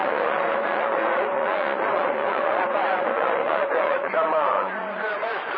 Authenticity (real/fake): fake